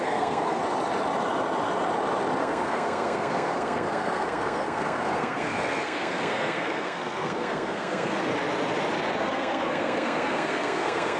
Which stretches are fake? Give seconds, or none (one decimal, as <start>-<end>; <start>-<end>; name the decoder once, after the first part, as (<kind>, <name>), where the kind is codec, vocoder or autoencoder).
0.0-0.6 (codec, SNAC); 2.4-8.3; 9.2-11.2